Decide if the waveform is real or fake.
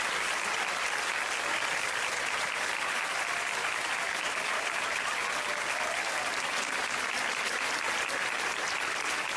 real